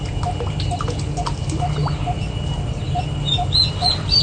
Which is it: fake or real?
real